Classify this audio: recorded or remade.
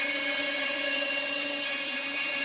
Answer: remade